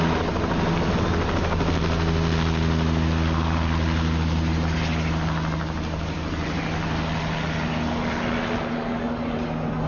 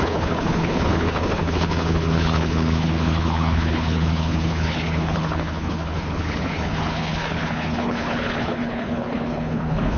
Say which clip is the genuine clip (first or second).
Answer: first